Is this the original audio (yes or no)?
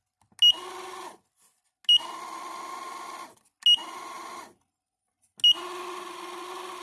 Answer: yes